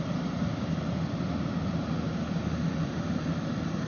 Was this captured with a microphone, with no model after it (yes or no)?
yes